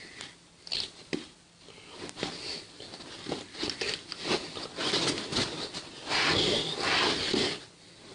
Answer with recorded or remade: recorded